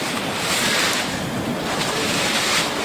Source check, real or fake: fake